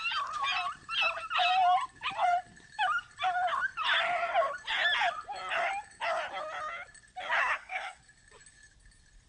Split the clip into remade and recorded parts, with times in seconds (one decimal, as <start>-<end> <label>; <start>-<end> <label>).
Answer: 0.0-7.4 recorded; 7.4-8.0 remade; 8.0-9.3 recorded